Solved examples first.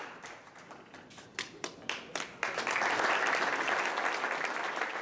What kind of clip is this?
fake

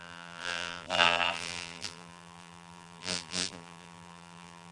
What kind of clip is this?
fake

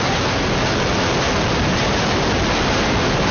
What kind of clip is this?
real